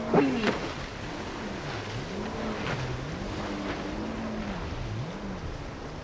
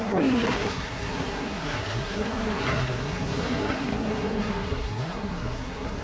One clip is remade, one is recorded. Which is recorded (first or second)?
first